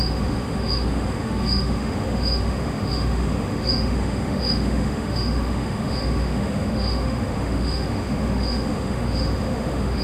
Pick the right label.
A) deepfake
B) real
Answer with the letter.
A